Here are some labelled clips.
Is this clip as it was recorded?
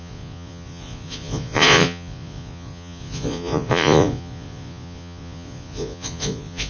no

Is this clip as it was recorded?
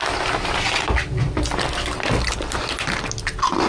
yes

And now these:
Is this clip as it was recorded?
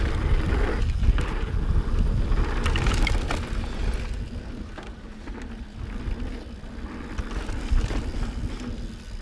yes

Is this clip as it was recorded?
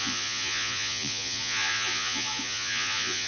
no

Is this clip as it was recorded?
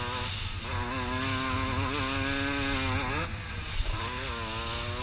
yes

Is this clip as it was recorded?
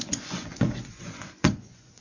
no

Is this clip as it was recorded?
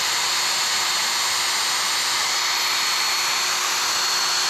yes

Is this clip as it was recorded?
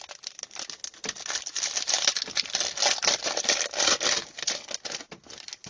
yes